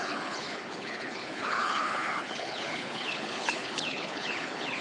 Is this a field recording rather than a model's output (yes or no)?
no